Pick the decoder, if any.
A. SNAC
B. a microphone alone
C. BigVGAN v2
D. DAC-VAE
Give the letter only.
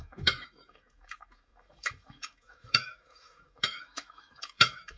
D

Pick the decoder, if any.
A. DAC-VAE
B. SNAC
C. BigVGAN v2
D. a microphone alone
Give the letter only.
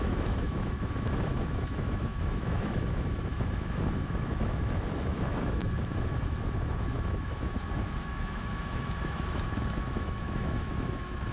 A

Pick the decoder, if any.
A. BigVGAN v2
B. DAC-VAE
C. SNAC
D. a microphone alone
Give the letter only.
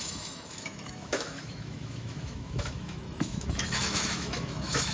B